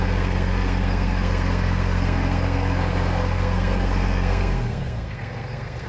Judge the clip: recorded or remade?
remade